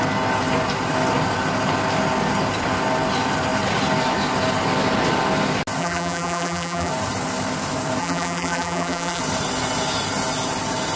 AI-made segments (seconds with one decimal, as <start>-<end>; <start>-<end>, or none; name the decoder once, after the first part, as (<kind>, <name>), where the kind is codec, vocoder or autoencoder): 5.8-6.9 (vocoder, BigVGAN v2); 8.0-9.2